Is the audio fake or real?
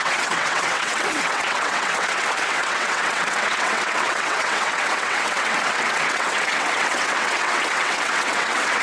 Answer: fake